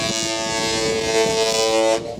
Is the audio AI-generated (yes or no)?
no